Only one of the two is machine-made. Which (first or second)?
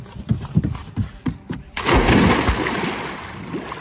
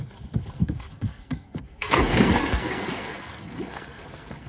second